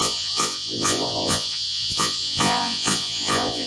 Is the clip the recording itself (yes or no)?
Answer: no